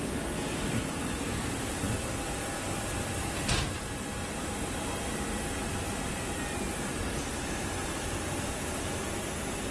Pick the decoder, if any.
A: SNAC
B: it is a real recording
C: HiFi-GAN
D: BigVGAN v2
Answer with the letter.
B